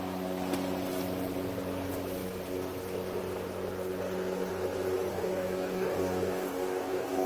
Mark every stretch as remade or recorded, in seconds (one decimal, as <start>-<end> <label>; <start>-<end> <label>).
0.0-5.1 recorded; 5.1-7.3 remade